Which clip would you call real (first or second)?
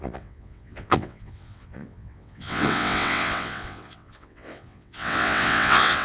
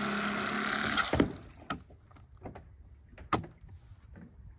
second